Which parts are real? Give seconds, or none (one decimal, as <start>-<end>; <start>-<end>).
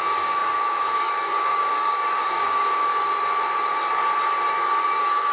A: 2.9-4.5